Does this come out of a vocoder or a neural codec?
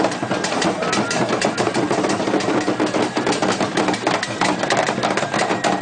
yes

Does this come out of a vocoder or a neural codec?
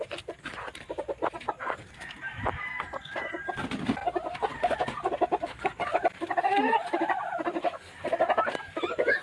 no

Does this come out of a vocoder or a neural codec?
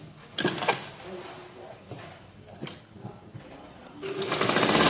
no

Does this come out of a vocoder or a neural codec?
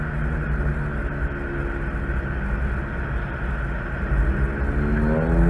no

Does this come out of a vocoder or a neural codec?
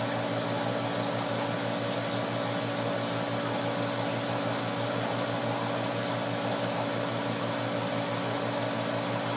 no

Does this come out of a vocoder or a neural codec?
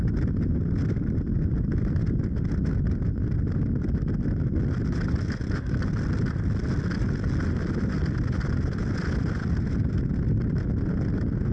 no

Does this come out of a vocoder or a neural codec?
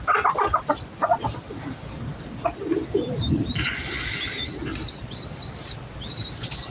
no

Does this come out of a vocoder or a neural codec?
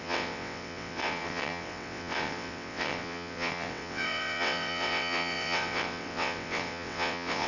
yes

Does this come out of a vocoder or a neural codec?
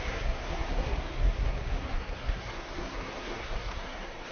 yes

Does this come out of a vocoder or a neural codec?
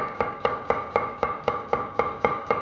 yes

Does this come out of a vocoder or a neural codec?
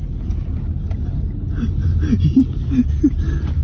no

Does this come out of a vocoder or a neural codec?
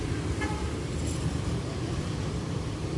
yes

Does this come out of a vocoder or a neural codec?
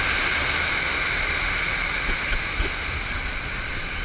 no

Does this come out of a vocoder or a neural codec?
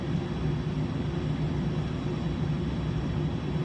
no